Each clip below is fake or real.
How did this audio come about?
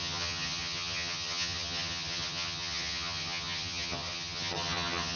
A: fake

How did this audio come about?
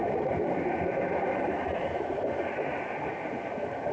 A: fake